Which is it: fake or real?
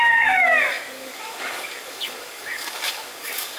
fake